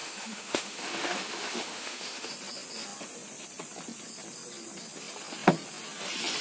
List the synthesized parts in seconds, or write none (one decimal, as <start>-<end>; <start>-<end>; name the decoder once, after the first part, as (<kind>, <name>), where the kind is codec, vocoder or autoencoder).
0.0-2.3 (autoencoder, DAC-VAE)